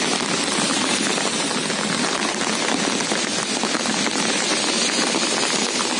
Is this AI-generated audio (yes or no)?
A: no